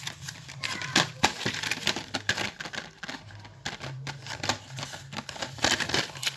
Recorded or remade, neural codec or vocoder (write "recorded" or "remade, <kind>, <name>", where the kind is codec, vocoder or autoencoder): remade, vocoder, BigVGAN v2